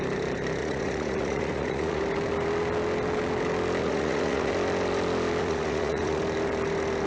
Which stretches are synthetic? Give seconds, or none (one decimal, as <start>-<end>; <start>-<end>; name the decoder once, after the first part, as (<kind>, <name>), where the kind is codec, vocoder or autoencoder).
0.6-2.0 (vocoder, Vocos); 3.8-4.5; 5.4-6.2